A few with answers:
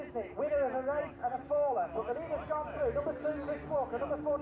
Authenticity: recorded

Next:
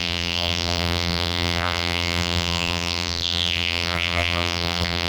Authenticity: remade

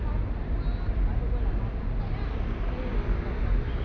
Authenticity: recorded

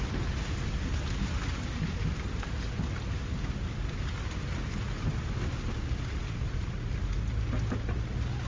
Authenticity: recorded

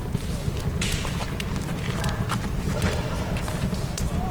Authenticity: recorded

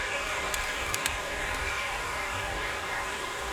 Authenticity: remade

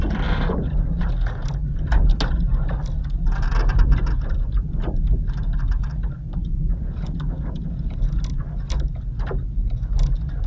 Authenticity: recorded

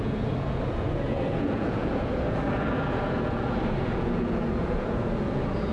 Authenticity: remade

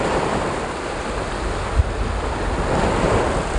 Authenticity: recorded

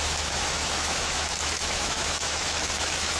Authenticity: remade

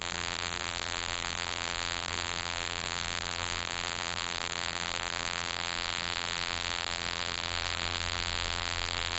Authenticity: remade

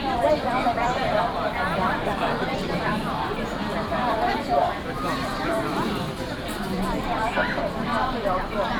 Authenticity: remade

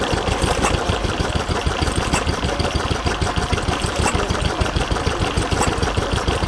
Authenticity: recorded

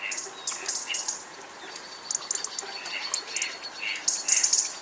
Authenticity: recorded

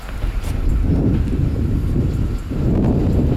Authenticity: recorded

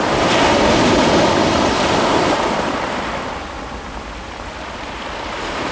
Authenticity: remade